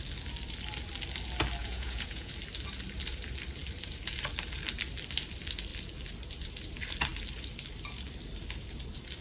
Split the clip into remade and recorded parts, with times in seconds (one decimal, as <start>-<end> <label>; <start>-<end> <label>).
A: 0.0-1.6 recorded; 1.6-2.3 remade; 2.3-9.2 recorded